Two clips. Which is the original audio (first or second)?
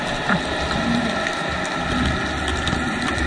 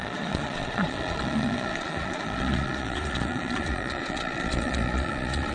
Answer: first